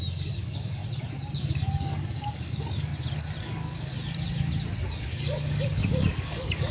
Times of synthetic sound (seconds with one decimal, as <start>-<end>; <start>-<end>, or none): 0.0-0.8; 1.4-2.9; 3.4-3.9; 4.8-6.7